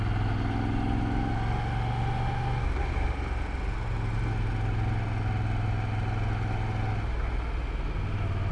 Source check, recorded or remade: recorded